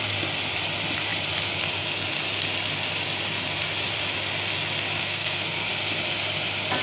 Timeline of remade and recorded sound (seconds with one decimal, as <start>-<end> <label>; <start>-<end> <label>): 0.0-5.0 recorded; 5.0-5.7 remade; 5.7-6.8 recorded